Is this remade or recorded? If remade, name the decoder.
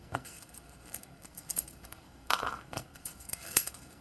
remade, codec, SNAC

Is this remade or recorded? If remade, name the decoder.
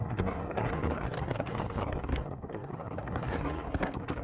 remade, codec, SNAC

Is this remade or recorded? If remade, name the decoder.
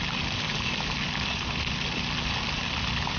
recorded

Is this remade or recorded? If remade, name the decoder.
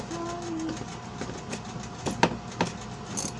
recorded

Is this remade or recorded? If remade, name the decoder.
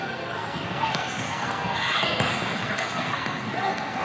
remade, codec, SNAC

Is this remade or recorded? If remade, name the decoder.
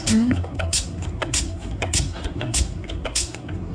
remade, codec, SNAC